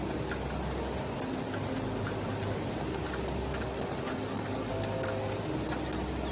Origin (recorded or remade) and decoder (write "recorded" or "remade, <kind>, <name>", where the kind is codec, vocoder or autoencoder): recorded